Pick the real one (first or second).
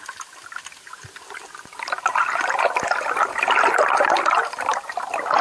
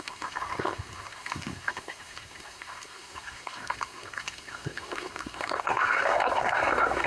first